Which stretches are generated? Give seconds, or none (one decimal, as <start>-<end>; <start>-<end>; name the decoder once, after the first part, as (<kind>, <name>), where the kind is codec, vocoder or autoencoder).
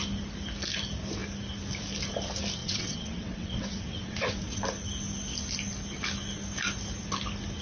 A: 2.6-4.6 (vocoder, WaveNeXt)